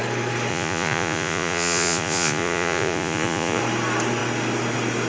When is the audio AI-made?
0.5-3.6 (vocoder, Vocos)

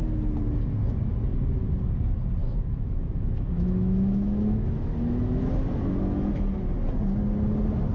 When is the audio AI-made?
2.4-5.4 (autoencoder, DAC-VAE)

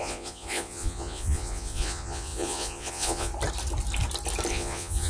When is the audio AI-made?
0.0-3.3 (vocoder, Vocos); 4.5-5.1

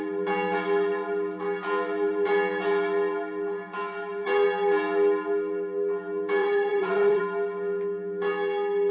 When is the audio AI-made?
6.4-7.2 (vocoder, Vocos)

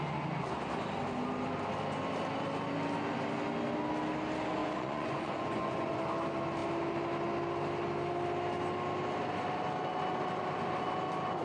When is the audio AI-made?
4.6-6.0 (vocoder, Vocos)

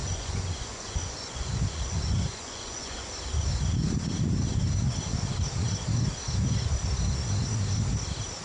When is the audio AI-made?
0.0-3.1 (vocoder, Vocos)

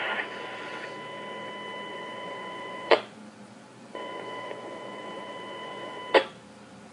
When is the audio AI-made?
1.9-6.0 (vocoder, Vocos)

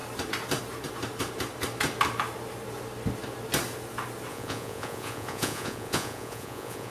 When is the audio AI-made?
4.3-6.9 (vocoder, Vocos)